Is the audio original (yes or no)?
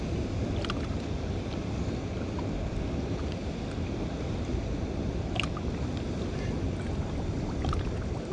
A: yes